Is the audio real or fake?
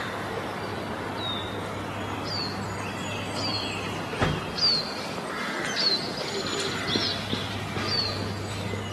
real